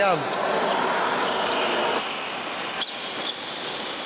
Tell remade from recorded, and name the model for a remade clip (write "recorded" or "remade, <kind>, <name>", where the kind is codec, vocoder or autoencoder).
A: recorded